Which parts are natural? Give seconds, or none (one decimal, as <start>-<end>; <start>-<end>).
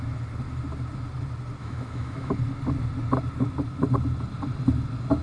0.0-1.6; 2.3-5.2